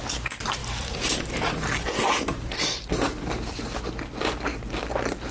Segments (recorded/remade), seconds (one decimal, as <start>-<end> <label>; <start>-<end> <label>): 0.0-0.6 recorded; 0.6-3.8 remade; 3.8-5.3 recorded